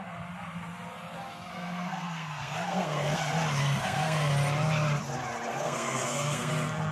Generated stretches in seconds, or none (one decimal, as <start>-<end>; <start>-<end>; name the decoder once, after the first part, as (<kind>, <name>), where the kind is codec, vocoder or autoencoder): 1.5-3.2 (codec, SNAC); 3.6-4.3; 5.5-6.5